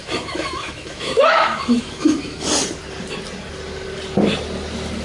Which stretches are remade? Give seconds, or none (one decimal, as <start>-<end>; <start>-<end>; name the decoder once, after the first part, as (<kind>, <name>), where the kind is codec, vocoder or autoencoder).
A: 0.0-2.5 (autoencoder, DAC-VAE)